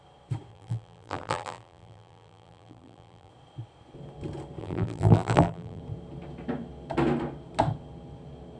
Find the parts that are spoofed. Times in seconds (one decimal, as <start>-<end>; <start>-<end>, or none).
0.5-3.3; 4.6-5.8